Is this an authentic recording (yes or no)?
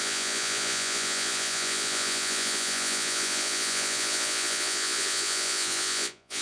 no